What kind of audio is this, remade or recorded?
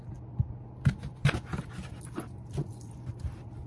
recorded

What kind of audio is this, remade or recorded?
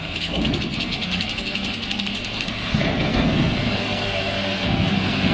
remade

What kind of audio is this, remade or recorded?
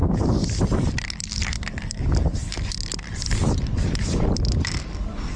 recorded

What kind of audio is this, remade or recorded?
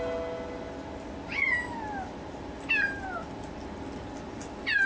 recorded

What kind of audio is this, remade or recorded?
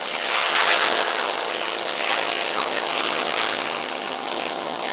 remade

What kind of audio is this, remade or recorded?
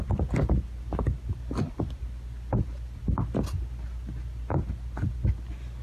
recorded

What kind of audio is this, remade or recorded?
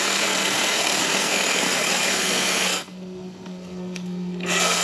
remade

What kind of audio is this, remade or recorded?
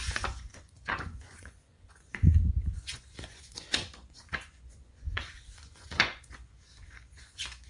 remade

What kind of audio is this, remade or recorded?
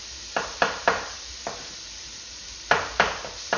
remade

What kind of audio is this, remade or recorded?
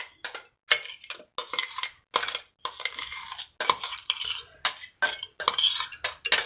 recorded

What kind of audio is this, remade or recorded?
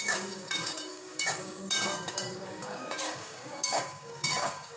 remade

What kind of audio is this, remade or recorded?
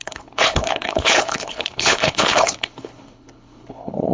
remade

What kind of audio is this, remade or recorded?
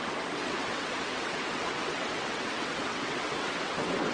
remade